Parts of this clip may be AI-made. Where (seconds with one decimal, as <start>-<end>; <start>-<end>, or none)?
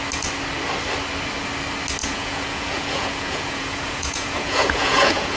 2.0-5.4